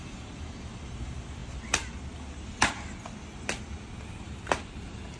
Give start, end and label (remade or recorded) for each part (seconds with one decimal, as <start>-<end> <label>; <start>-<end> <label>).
0.0-5.2 recorded